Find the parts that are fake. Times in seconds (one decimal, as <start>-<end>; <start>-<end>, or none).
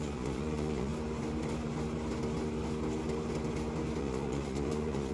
0.0-0.9; 4.0-5.1